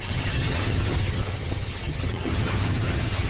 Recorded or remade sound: remade